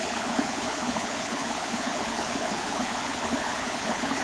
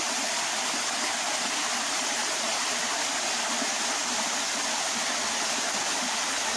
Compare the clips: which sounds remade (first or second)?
first